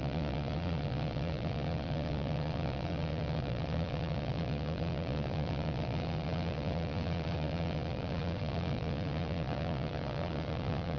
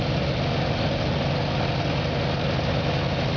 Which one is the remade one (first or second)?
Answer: first